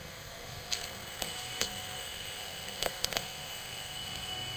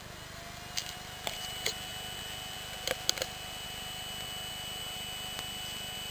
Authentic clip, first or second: second